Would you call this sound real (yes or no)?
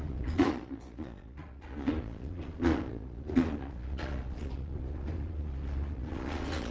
no